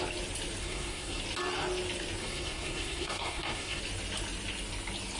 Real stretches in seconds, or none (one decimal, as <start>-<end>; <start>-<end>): 0.0-0.6; 1.2-2.2; 3.8-5.2